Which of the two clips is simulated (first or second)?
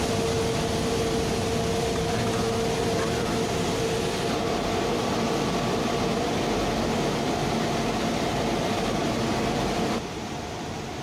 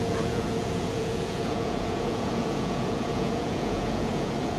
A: second